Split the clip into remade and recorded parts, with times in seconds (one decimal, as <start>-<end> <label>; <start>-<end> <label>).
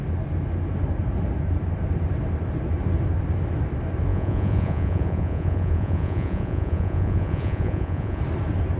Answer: 0.0-4.1 recorded; 4.1-8.2 remade; 8.2-8.8 recorded